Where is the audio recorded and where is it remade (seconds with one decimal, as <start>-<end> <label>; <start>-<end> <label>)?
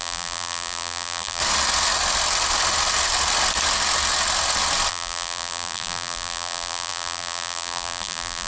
0.0-1.4 remade; 1.4-4.9 recorded; 4.9-8.5 remade